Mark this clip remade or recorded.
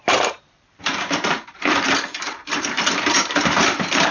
remade